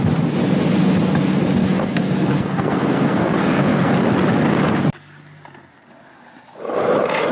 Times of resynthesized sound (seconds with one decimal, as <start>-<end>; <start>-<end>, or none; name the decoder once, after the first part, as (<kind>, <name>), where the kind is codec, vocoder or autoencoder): 1.6-3.9 (codec, SNAC)